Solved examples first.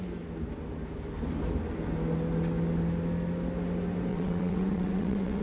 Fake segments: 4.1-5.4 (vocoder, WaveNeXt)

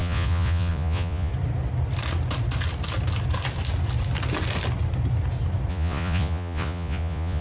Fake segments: 0.0-1.3 (vocoder, Vocos); 5.7-7.4

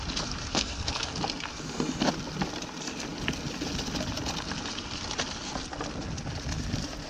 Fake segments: 0.5-1.2 (codec, SNAC)

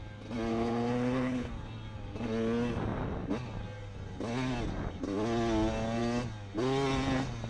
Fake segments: 0.5-1.5 (codec, HILCodec)

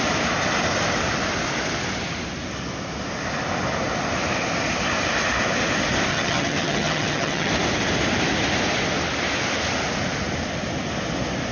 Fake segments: 6.1-7.5 (vocoder, HiFi-GAN)

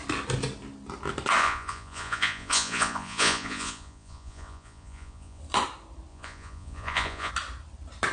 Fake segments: 1.4-5.4 (vocoder, Vocos); 6.1-7.3